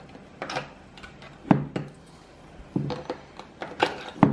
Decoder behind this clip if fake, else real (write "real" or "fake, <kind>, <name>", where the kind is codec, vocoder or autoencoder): real